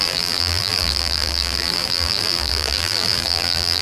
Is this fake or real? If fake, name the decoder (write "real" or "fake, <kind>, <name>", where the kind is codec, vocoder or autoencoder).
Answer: fake, vocoder, BigVGAN v2